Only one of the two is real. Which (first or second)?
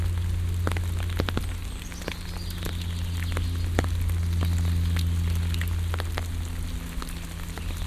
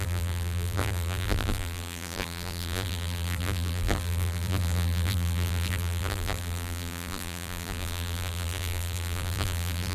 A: first